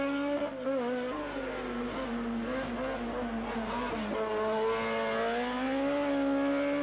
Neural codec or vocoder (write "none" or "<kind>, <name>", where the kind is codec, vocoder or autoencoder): none